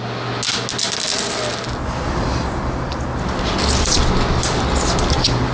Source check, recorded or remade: recorded